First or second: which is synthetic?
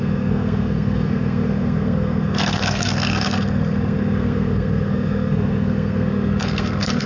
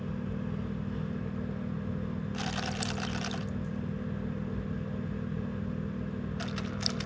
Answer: first